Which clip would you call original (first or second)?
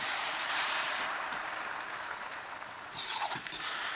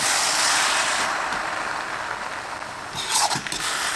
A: second